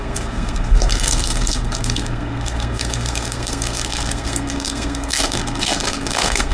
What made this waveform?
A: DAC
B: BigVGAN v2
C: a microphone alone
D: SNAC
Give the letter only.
D